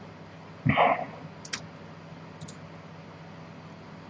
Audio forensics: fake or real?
real